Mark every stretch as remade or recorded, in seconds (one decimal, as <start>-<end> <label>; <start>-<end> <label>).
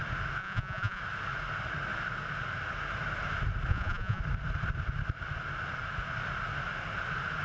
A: 0.0-0.4 recorded; 0.4-1.0 remade; 1.0-3.7 recorded; 3.7-4.2 remade; 4.2-7.4 recorded